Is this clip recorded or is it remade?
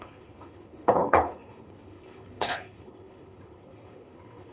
remade